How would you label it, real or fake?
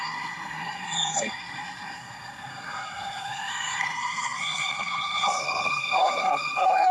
fake